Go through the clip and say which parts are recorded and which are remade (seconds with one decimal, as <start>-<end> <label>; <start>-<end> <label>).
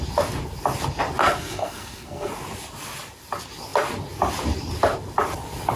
0.0-1.2 recorded; 1.2-2.3 remade; 2.3-5.8 recorded